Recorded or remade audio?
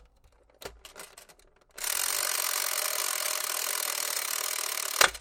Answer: recorded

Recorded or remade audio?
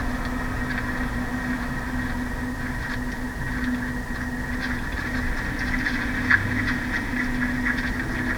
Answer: recorded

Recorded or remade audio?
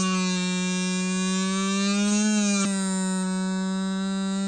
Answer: recorded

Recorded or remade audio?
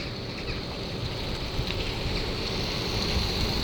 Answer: recorded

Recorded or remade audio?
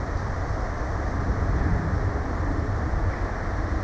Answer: recorded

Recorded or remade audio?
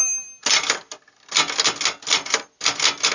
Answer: recorded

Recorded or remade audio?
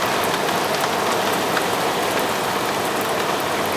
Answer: recorded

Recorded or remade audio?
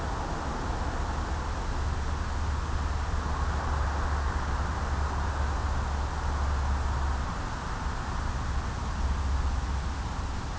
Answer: recorded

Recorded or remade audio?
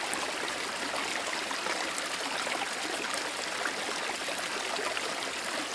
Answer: recorded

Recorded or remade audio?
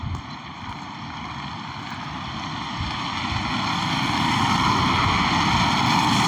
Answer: recorded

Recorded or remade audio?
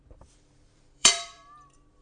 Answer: remade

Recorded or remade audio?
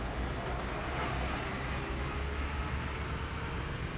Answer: recorded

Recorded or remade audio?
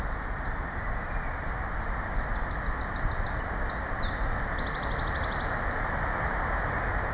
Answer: recorded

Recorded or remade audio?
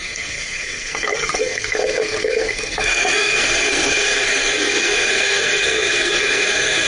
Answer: remade